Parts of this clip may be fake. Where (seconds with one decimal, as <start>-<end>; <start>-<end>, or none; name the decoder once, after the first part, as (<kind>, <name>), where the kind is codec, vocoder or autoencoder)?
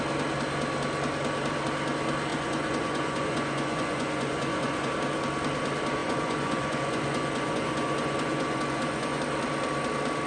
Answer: 2.3-4.9 (vocoder, Vocos); 6.0-9.2